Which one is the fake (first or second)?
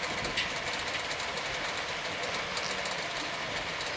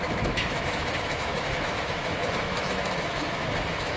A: second